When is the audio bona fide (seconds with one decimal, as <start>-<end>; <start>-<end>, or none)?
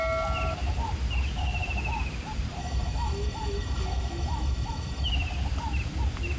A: 0.0-2.6; 5.1-6.4